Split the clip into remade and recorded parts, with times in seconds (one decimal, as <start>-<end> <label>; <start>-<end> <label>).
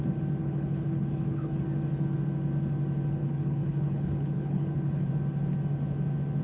0.0-0.4 recorded; 0.4-1.6 remade; 1.6-3.2 recorded; 3.2-5.1 remade; 5.1-6.4 recorded